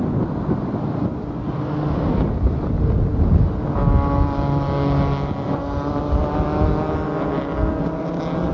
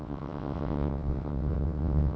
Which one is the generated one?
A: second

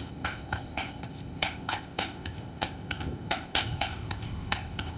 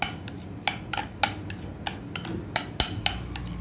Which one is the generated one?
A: first